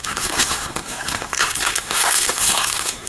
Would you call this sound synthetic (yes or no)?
yes